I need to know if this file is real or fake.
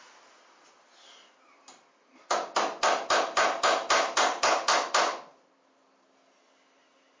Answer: real